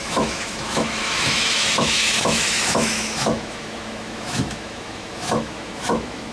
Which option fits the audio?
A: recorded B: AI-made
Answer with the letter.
B